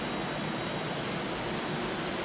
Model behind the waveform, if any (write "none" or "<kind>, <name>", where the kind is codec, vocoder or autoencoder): none